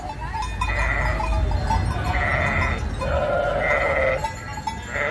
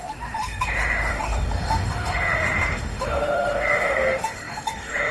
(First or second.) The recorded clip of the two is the first